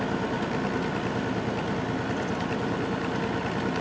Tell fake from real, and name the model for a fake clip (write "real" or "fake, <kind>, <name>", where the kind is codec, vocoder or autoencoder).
real